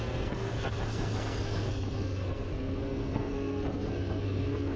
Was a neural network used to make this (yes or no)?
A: yes